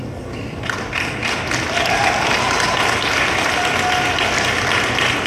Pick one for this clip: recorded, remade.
recorded